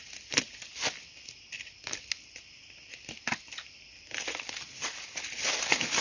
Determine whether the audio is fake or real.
real